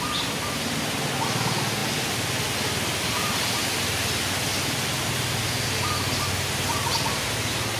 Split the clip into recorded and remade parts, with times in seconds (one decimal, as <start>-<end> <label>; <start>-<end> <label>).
0.0-7.8 recorded